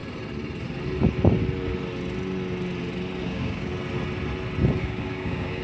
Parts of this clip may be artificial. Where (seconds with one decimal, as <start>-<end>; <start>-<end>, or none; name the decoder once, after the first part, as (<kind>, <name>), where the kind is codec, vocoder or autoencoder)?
3.2-3.7 (codec, DAC); 4.8-5.6